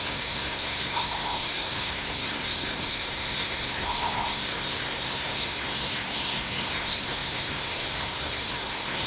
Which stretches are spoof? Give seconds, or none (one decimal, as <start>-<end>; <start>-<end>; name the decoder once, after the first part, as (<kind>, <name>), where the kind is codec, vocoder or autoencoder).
0.0-9.1 (codec, SNAC)